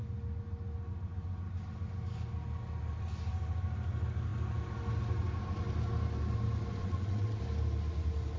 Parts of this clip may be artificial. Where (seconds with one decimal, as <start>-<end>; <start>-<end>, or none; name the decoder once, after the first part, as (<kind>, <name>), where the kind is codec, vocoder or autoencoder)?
6.8-7.4 (vocoder, WaveNeXt)